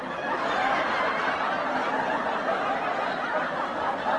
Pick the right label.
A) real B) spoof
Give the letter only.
A